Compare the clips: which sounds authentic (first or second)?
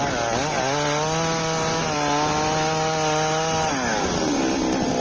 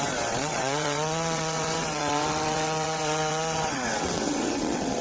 first